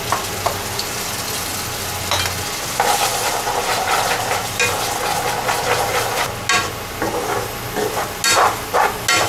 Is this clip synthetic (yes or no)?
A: no